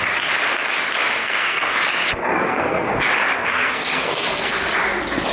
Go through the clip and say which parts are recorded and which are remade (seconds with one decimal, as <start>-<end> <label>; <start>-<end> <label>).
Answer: 0.0-1.2 recorded; 1.2-1.7 remade; 1.7-2.2 recorded; 2.2-2.9 remade; 2.9-3.4 recorded; 3.4-4.6 remade; 4.6-5.3 recorded